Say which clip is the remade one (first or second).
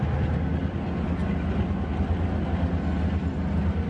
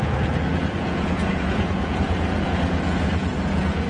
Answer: second